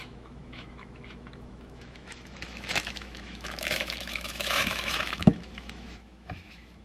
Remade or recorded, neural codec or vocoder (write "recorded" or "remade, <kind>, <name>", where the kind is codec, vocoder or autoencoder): remade, autoencoder, DAC-VAE